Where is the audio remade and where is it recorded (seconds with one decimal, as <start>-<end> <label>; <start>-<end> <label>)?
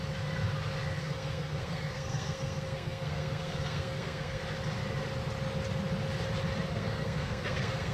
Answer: 0.0-1.0 recorded; 1.0-4.4 remade; 4.4-6.7 recorded; 6.7-7.9 remade